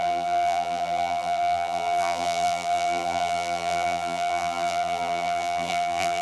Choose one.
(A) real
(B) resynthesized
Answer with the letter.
B